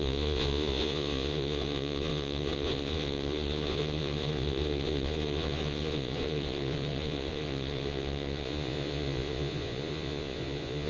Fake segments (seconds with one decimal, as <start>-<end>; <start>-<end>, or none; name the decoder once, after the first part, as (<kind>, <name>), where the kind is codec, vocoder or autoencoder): 0.0-10.9 (vocoder, Vocos)